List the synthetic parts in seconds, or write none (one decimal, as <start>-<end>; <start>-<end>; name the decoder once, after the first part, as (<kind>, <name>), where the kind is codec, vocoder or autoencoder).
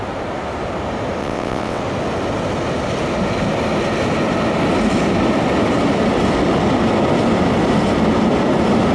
1.2-1.8 (vocoder, WaveNeXt)